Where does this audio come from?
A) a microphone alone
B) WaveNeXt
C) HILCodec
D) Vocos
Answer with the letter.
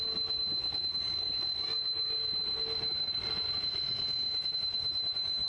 A